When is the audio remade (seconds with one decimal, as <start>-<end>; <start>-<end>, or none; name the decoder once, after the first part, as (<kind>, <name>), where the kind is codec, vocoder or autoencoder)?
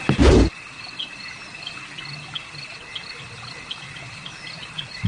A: none